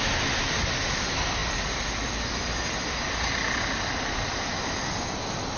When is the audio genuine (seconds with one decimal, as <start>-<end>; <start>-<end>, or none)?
0.0-5.6